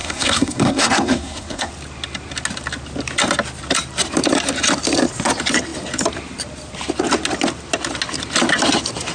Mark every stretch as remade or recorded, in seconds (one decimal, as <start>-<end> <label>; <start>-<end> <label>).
0.0-1.7 remade; 1.7-9.1 recorded